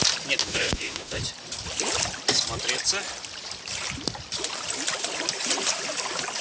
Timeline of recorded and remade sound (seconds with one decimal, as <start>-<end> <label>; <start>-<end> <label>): 0.0-0.4 recorded; 0.4-1.2 remade; 1.2-6.4 recorded